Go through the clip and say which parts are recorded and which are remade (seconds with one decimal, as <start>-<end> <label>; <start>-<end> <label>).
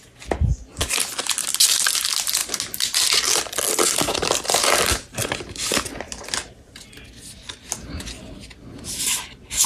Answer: 0.0-9.7 recorded